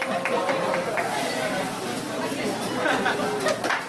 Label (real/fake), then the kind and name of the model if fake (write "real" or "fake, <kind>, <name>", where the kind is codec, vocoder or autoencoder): real